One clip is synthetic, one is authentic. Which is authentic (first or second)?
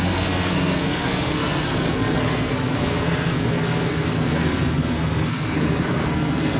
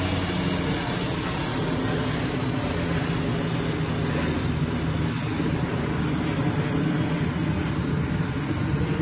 second